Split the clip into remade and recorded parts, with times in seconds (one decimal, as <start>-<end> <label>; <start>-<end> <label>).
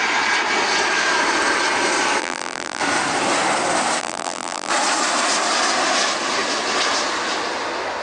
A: 0.0-2.2 recorded; 2.2-2.8 remade; 2.8-4.0 recorded; 4.0-4.7 remade; 4.7-8.0 recorded